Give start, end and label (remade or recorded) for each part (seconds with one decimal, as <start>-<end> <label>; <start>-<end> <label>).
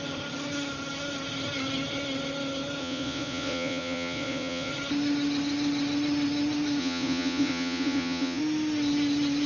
0.0-2.8 recorded; 2.8-4.7 remade; 4.7-6.8 recorded; 6.8-8.4 remade; 8.4-9.5 recorded